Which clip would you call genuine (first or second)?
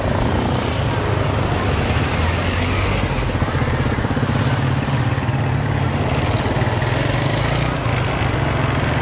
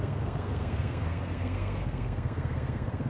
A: first